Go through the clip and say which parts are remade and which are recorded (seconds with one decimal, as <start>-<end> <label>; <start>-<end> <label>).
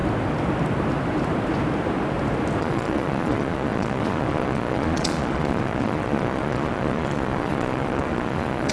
0.0-2.6 recorded; 2.6-8.7 remade